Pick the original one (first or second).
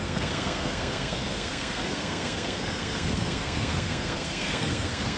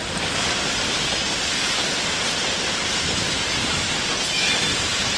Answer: second